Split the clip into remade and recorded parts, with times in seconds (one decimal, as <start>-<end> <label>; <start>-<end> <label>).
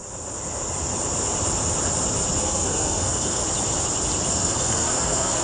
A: 0.0-2.4 recorded; 2.4-3.4 remade; 3.4-4.3 recorded; 4.3-5.4 remade